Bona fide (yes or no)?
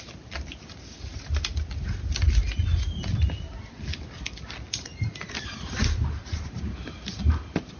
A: yes